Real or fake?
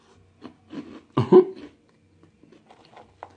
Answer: real